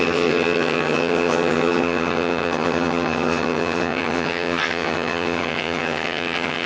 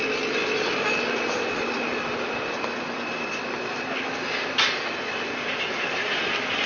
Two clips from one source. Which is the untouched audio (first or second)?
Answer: second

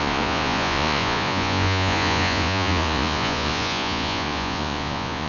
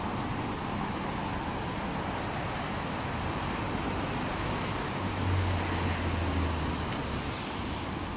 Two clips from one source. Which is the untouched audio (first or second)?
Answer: second